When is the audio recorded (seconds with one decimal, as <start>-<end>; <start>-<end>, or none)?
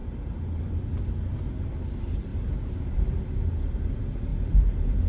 0.6-2.3; 3.2-4.3